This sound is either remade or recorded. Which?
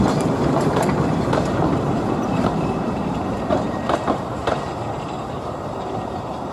remade